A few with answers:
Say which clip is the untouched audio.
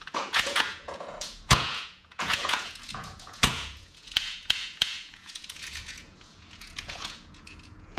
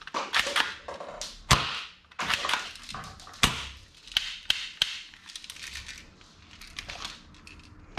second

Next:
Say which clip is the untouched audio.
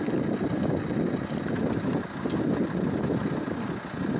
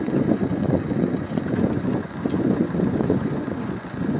first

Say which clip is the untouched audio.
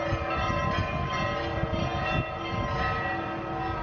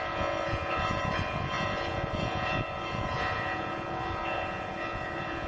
first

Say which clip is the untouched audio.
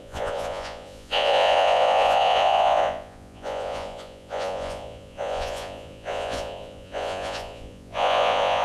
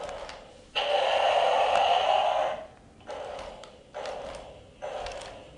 second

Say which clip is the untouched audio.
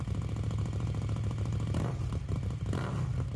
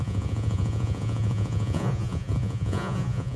first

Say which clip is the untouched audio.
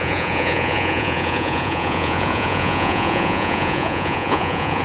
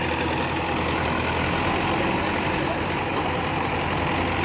second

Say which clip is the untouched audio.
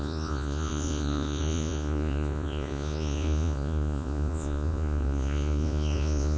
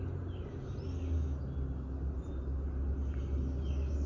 second